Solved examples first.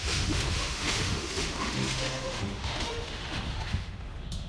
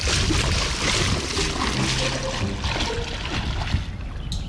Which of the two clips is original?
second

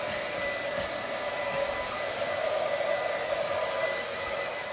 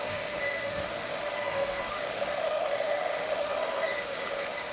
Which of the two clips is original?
first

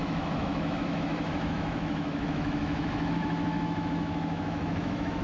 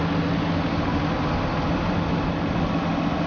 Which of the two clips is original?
second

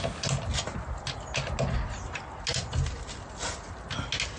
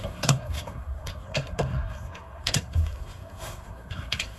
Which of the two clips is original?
first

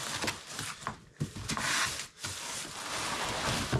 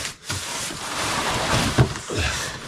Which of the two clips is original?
first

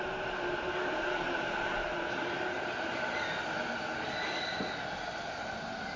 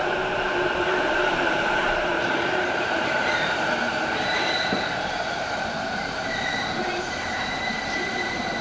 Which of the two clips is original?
first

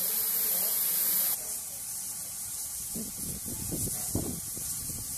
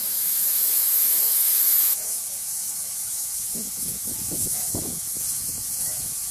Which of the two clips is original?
first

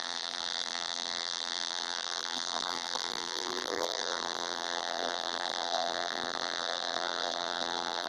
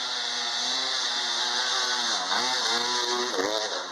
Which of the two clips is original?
second